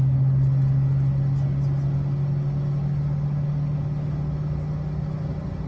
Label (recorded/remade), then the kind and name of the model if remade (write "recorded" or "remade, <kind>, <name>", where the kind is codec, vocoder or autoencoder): recorded